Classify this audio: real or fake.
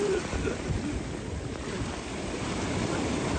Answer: fake